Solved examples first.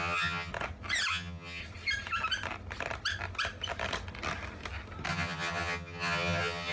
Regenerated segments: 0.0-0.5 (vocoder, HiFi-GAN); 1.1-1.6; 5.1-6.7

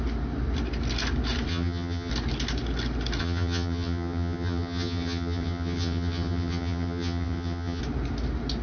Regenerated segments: 1.5-2.1 (vocoder, HiFi-GAN); 3.2-7.8

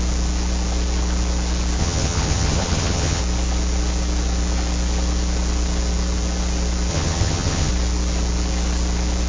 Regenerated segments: 1.8-3.2 (vocoder, HiFi-GAN); 6.9-7.7

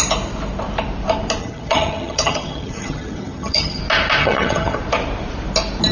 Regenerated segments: 1.4-3.8 (vocoder, HiFi-GAN); 4.2-4.8

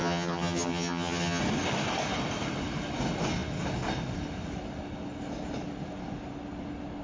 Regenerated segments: 0.0-1.4 (vocoder, HiFi-GAN)

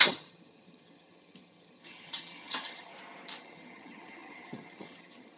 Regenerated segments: 0.0-2.9 (vocoder, HiFi-GAN); 3.4-5.4